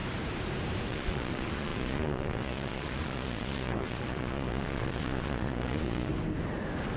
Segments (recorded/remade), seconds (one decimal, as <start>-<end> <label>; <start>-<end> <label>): 0.0-0.9 recorded; 0.9-6.1 remade; 6.1-7.0 recorded